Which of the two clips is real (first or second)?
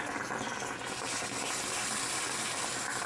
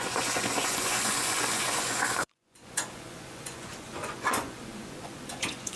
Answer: first